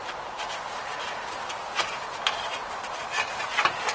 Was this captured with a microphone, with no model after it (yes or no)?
yes